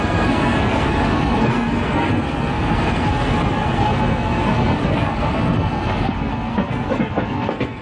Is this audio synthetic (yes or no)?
yes